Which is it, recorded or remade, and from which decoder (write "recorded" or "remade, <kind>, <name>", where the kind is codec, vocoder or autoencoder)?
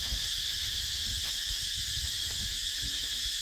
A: remade, autoencoder, DAC-VAE